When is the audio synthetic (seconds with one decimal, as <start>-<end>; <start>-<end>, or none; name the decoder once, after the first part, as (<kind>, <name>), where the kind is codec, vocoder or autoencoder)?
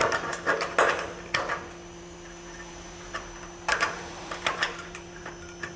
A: 1.8-5.3 (vocoder, BigVGAN v2)